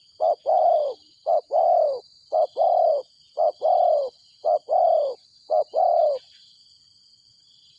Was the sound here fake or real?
real